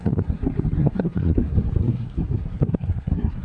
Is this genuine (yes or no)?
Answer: no